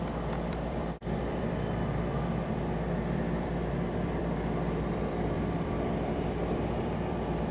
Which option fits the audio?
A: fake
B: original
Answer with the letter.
A